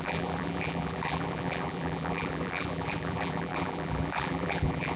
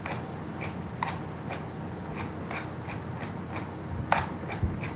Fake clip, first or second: first